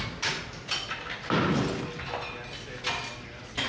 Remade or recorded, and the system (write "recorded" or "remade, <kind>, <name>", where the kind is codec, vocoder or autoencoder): recorded